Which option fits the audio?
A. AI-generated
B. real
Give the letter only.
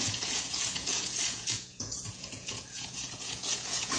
A